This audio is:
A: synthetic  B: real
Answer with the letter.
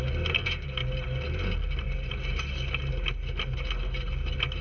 B